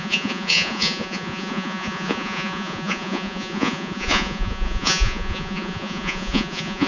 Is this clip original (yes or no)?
no